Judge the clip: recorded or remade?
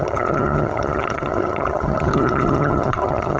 remade